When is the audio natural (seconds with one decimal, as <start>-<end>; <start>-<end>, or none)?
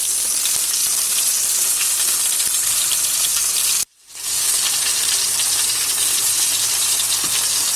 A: 0.0-7.8